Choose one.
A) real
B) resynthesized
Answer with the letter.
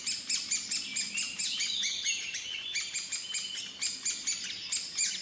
A